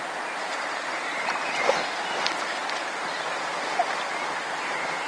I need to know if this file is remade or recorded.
recorded